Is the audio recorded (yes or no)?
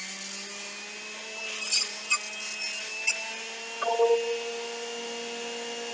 yes